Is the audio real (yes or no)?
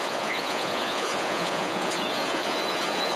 no